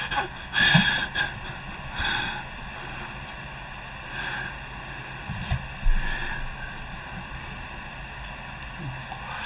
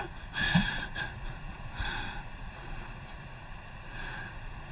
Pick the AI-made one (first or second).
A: second